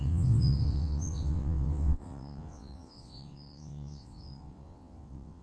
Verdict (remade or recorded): remade